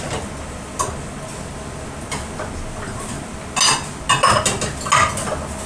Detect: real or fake real